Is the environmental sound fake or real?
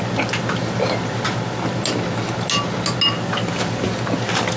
real